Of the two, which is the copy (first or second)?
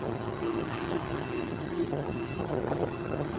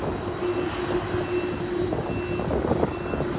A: first